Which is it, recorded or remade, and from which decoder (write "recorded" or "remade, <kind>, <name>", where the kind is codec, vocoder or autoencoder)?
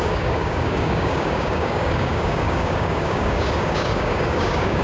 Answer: remade, codec, DAC